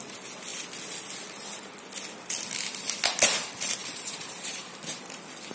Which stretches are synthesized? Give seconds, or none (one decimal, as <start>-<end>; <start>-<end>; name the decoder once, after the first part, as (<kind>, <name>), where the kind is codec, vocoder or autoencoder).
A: 3.8-5.0 (vocoder, BigVGAN v2)